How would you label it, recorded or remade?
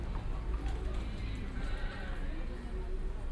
recorded